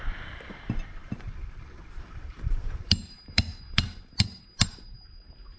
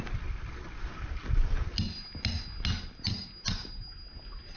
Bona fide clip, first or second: second